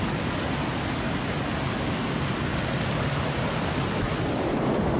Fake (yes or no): no